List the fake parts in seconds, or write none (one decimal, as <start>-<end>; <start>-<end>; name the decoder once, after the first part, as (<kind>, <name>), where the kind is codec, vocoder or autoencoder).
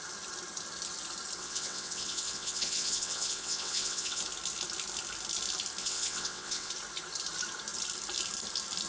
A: 1.4-4.2 (vocoder, WaveNeXt); 5.8-6.7